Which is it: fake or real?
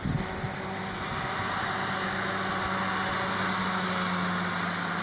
real